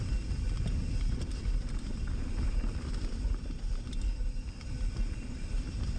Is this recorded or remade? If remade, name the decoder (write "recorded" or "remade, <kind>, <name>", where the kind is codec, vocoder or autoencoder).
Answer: recorded